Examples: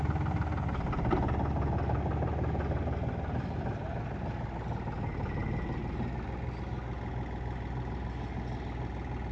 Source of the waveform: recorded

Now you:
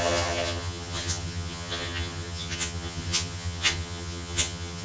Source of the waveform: remade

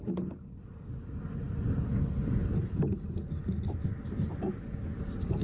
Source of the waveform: recorded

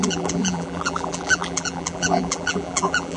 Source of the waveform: remade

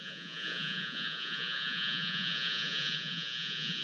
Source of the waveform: remade